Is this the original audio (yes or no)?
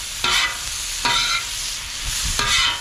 yes